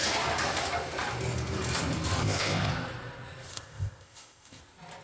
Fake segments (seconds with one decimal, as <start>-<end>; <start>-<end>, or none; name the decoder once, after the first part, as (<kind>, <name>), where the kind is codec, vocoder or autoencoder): 2.2-2.7 (codec, ZipCodec); 3.5-4.6